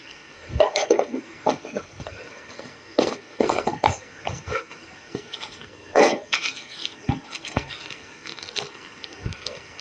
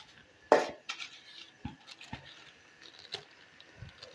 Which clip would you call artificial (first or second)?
first